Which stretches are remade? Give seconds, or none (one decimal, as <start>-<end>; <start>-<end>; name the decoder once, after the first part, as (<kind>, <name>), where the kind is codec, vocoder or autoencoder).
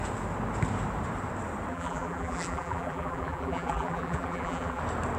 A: 1.7-4.8 (vocoder, BigVGAN v2)